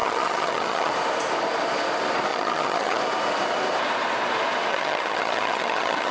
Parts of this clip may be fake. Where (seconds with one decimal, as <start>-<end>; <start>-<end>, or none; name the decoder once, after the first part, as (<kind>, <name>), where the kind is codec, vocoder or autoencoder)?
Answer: 0.0-0.9 (vocoder, HiFi-GAN); 2.3-3.0; 4.7-6.1